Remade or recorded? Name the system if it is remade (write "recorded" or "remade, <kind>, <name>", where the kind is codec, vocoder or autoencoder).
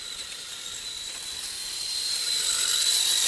remade, vocoder, BigVGAN v2